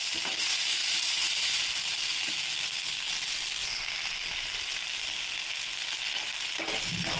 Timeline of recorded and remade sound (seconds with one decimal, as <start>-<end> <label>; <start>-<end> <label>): 0.0-0.8 recorded; 0.8-2.3 remade; 2.3-3.6 recorded; 3.6-5.5 remade; 5.5-7.2 recorded